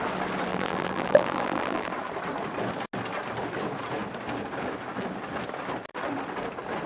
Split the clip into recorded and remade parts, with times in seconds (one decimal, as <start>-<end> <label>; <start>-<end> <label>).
0.0-0.5 recorded; 0.5-1.9 remade; 1.9-6.9 recorded